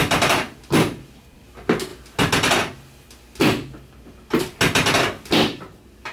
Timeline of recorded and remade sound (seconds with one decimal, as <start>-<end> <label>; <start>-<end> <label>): 0.0-6.1 recorded